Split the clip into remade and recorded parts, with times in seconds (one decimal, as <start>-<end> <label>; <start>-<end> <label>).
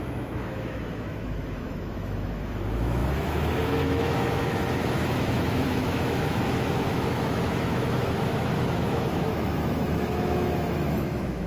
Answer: 0.0-11.5 remade